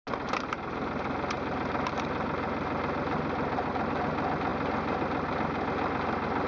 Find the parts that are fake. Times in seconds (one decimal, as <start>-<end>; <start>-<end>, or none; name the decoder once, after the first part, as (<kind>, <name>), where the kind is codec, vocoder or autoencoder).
none